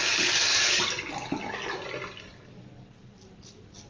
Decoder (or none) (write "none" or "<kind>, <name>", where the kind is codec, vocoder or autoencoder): none